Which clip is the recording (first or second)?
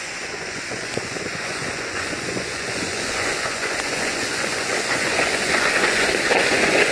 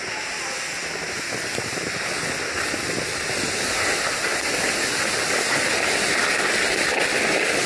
second